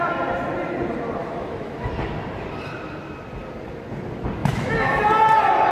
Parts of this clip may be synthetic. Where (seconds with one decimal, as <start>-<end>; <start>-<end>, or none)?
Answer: 1.2-1.9; 4.4-5.0